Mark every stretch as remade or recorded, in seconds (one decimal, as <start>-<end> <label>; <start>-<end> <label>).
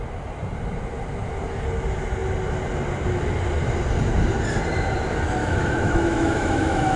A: 0.0-5.4 recorded; 5.4-7.0 remade